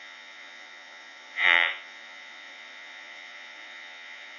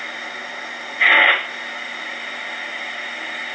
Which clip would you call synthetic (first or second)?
first